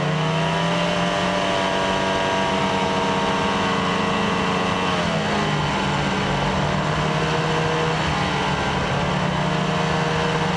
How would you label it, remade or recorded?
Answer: recorded